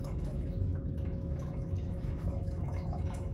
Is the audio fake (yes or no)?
yes